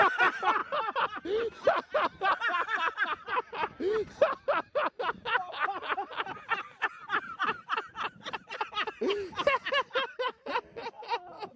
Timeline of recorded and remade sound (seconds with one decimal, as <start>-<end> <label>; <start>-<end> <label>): 0.0-11.6 recorded